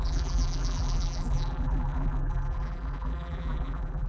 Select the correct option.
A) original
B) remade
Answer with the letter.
B